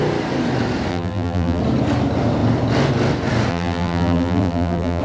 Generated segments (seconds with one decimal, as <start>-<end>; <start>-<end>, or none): 0.9-1.6; 3.5-5.0